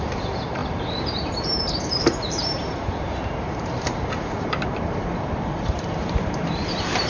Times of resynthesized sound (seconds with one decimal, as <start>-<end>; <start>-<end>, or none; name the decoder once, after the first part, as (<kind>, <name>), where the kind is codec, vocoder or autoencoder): 0.0-7.1 (vocoder, BigVGAN v2)